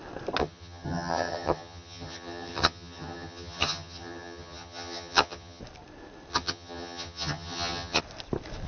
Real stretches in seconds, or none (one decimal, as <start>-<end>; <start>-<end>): 0.0-0.4; 5.6-6.3; 8.0-8.7